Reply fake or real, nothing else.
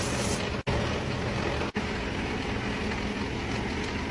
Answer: real